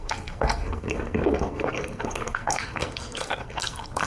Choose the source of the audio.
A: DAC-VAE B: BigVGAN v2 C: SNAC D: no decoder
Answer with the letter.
C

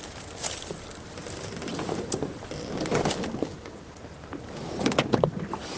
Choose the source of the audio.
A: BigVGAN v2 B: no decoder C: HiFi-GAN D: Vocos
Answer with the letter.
A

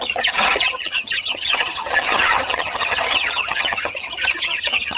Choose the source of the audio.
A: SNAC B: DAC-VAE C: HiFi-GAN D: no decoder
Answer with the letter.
C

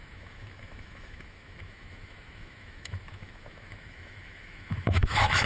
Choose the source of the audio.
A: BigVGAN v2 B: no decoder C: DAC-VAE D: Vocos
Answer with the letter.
C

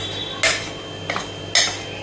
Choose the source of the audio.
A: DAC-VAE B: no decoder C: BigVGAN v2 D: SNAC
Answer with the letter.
B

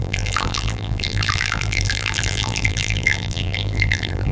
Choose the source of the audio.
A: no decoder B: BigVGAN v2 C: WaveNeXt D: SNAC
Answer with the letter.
B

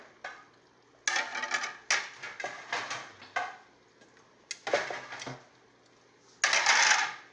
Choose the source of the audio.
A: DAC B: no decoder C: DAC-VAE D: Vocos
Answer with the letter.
B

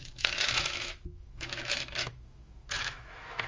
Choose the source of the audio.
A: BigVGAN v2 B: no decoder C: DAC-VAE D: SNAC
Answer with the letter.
C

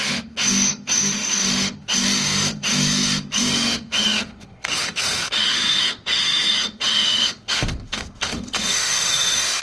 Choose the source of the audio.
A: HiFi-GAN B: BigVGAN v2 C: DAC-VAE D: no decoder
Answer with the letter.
C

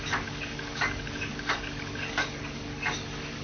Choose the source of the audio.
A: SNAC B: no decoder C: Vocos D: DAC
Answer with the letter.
D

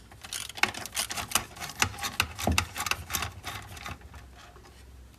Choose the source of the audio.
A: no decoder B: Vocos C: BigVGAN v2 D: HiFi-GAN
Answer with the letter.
A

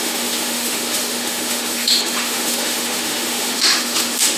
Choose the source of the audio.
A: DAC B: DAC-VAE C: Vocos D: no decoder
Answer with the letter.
B